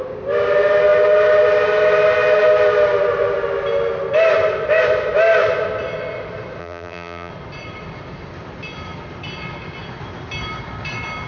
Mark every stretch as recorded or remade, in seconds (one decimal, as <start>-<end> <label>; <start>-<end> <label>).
0.0-6.6 recorded; 6.6-7.3 remade; 7.3-11.3 recorded